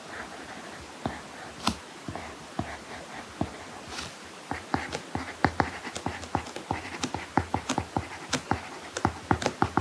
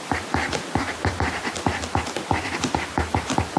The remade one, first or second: second